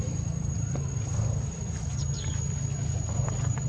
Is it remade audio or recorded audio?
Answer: recorded